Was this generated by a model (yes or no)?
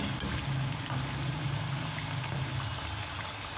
no